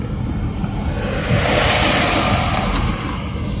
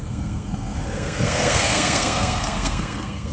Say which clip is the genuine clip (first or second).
first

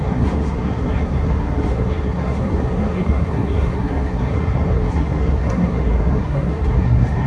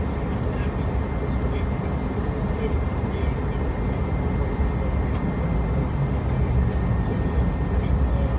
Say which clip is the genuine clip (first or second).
second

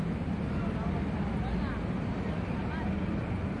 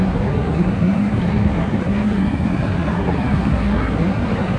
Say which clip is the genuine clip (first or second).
first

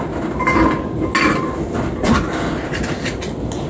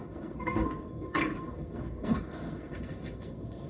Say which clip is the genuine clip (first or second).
first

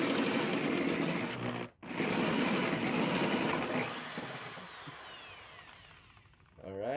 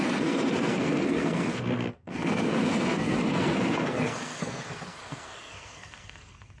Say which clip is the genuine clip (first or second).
first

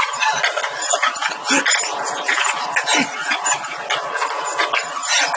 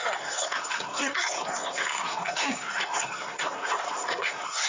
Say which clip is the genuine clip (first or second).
first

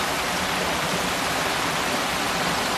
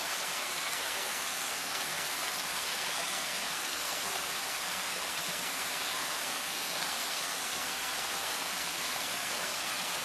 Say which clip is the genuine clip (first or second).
first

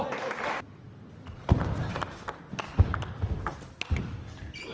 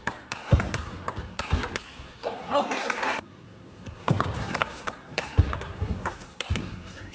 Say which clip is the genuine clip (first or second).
first